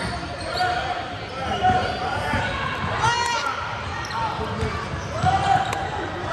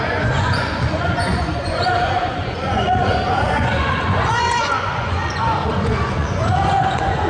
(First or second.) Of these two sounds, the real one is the first